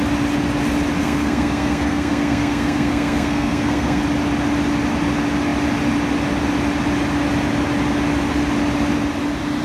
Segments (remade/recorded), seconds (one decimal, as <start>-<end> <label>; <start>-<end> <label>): 0.0-1.0 recorded; 1.0-4.0 remade; 4.0-9.6 recorded